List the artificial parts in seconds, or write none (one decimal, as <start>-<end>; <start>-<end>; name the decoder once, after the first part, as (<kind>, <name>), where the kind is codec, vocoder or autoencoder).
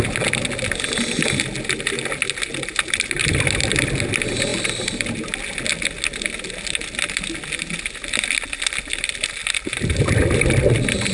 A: none